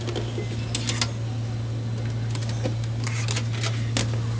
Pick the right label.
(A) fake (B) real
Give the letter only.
B